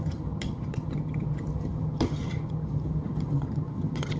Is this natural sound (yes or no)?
no